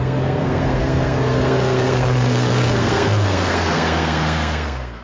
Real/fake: fake